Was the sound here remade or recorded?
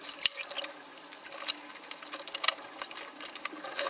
recorded